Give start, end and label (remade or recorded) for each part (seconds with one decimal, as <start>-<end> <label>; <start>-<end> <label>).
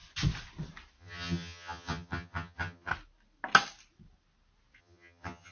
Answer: 0.0-1.0 recorded; 1.0-2.9 remade; 2.9-4.8 recorded; 4.8-5.5 remade